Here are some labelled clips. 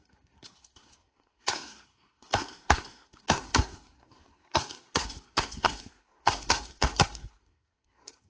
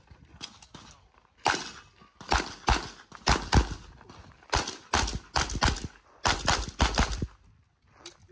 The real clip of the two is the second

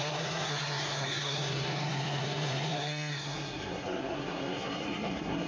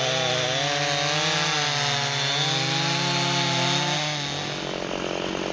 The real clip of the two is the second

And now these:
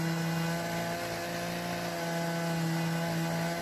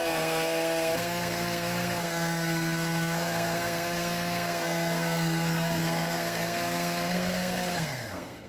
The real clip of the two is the first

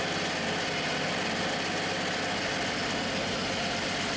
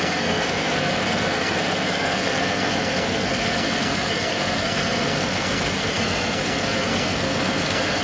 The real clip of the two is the first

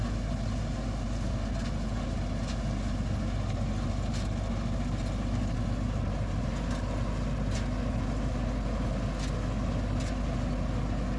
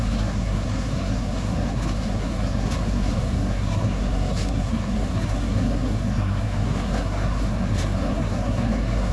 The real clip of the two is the first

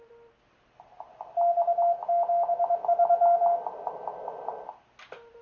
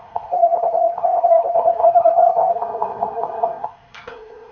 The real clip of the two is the first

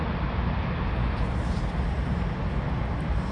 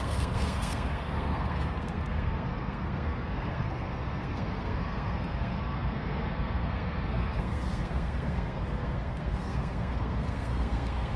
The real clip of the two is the first